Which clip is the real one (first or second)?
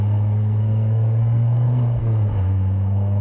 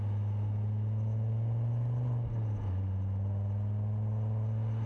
second